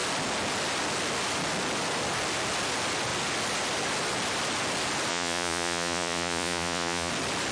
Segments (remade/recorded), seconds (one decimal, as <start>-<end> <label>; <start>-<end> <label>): 0.0-5.1 recorded; 5.1-7.1 remade; 7.1-7.5 recorded